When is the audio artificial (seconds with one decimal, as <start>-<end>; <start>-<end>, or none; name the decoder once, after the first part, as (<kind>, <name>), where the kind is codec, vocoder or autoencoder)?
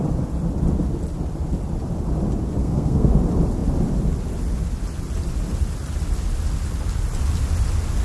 2.6-3.1 (codec, SNAC)